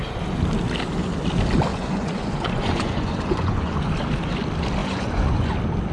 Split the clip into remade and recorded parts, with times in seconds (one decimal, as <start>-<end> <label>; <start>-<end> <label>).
0.0-1.7 recorded; 1.7-3.9 remade; 3.9-4.8 recorded; 4.8-5.5 remade; 5.5-5.9 recorded